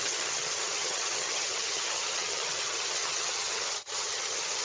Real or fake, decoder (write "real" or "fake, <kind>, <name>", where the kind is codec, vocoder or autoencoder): fake, vocoder, HiFi-GAN